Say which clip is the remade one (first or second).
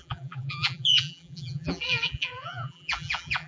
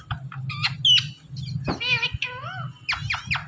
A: first